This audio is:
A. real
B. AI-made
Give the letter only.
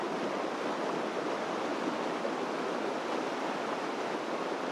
A